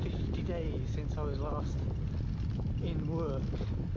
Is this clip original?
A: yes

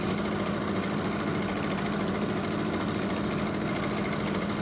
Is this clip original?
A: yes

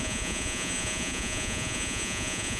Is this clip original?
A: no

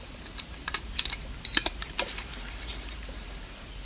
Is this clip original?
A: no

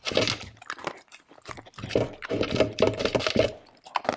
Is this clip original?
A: yes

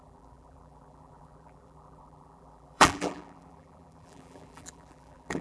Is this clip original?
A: no